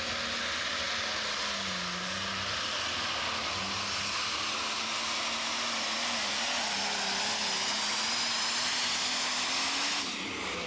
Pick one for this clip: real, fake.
real